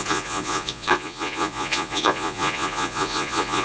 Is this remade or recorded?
remade